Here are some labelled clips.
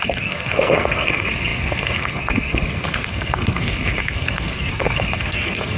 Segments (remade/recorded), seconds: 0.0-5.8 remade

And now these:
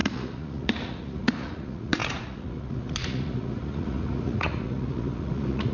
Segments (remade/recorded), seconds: 0.0-5.7 remade

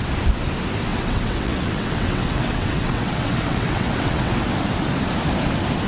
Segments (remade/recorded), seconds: 0.0-0.9 recorded; 0.9-4.4 remade; 4.4-5.9 recorded

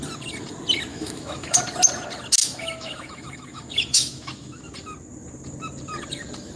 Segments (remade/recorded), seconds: 0.0-0.9 recorded; 0.9-1.6 remade; 1.6-2.4 recorded; 2.4-4.6 remade; 4.6-6.6 recorded